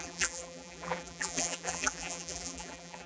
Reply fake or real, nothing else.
fake